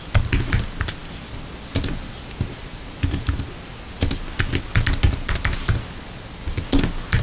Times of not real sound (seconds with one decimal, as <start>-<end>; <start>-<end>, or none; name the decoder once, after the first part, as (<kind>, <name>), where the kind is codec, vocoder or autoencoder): none